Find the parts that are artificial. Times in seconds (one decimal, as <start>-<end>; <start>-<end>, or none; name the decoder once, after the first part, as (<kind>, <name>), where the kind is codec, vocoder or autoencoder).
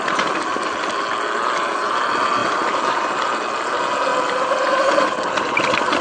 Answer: 2.4-3.3 (vocoder, BigVGAN v2); 4.1-5.2